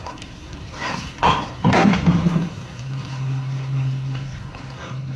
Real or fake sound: fake